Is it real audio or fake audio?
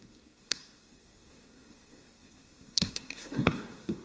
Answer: fake